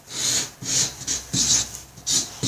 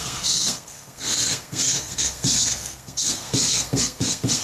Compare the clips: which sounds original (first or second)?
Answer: first